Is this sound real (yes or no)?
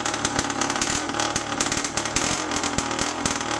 yes